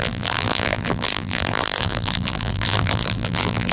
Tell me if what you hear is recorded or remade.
remade